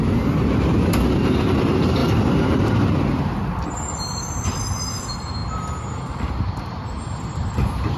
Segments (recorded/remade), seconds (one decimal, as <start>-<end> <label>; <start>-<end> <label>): 0.0-2.0 recorded; 2.0-2.7 remade; 2.7-5.4 recorded; 5.4-7.5 remade; 7.5-8.0 recorded